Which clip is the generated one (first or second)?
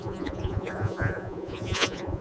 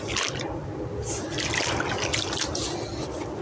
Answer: first